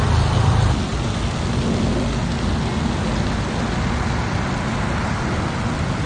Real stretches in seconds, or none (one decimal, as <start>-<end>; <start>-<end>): 0.0-6.1

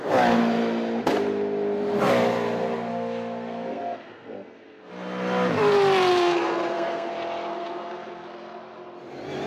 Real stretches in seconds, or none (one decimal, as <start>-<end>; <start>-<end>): 0.0-2.9; 4.9-6.1; 7.1-7.5; 8.6-9.5

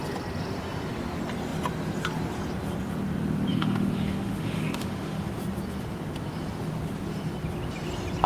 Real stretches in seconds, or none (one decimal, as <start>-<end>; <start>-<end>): 0.0-3.5; 5.3-8.3

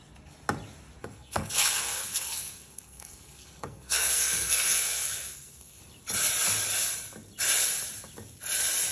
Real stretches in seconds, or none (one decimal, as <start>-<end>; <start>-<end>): 0.0-1.0; 5.8-8.9

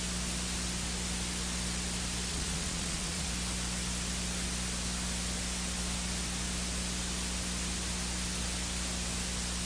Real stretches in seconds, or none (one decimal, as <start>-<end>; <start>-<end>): 0.0-2.3; 3.3-9.7

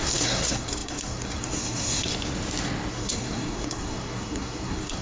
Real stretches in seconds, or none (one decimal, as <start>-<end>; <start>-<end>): 2.1-2.9

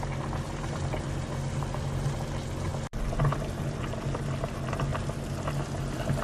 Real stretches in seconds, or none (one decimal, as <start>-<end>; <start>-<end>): 0.0-6.2

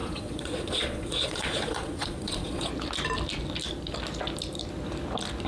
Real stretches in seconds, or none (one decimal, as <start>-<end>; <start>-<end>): 2.7-5.5